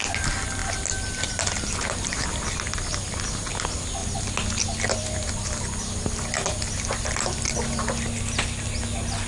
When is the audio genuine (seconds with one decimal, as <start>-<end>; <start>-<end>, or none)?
0.0-9.3